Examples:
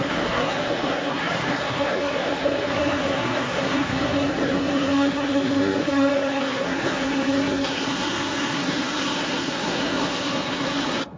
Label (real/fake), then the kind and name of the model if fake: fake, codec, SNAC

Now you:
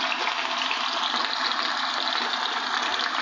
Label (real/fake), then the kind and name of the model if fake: real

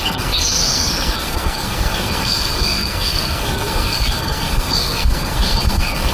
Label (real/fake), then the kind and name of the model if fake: fake, codec, SNAC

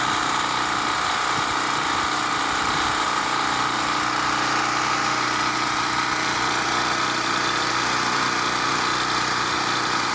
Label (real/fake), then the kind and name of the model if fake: real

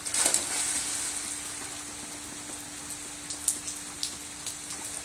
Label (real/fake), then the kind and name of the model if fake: real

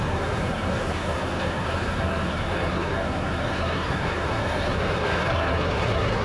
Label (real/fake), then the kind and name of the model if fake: fake, codec, SNAC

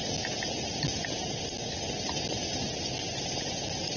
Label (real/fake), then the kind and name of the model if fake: real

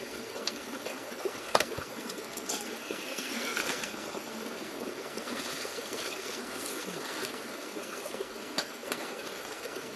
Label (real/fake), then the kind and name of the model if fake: fake, codec, SNAC